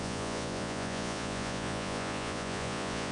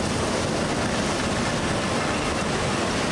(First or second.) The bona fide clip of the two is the second